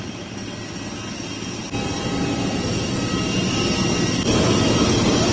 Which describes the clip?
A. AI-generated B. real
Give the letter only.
B